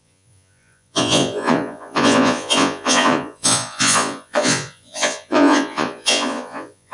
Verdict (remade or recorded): remade